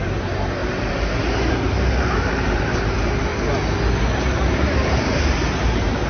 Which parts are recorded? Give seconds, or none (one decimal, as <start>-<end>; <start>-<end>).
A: 3.3-4.2